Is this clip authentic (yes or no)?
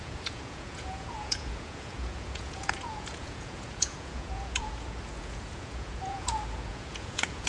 no